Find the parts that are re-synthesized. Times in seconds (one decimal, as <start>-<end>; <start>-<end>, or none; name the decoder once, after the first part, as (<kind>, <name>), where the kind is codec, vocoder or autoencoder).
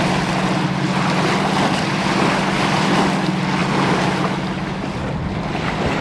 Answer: none